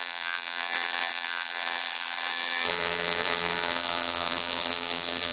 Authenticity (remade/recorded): remade